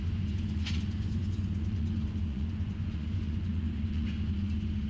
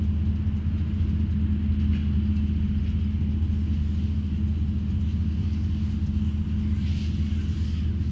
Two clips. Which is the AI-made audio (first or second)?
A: first